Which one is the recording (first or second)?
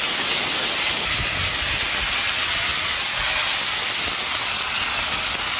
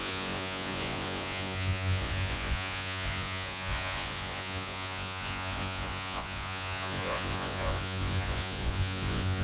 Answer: first